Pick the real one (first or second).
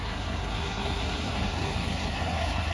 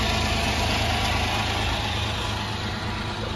second